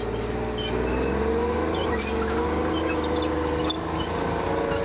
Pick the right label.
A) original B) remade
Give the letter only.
A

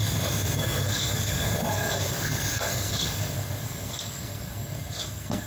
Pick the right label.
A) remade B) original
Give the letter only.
A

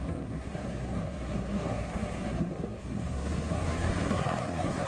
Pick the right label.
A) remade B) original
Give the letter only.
A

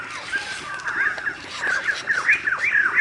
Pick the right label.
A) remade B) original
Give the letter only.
B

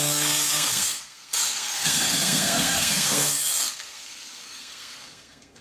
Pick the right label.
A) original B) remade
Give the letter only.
B